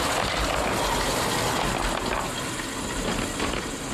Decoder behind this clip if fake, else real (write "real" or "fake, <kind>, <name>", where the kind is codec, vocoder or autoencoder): real